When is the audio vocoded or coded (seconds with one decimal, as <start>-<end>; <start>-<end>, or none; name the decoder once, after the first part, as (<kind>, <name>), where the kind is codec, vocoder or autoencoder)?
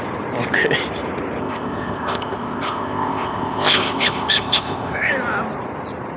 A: 1.4-5.1 (codec, ZipCodec)